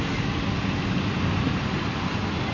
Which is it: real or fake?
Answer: real